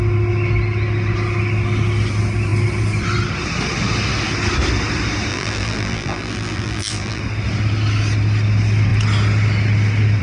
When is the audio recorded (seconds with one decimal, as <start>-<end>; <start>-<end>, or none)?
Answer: 0.0-5.3; 7.2-10.2